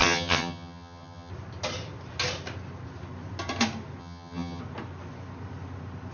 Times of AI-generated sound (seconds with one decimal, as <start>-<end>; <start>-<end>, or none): 0.0-1.3; 4.0-4.6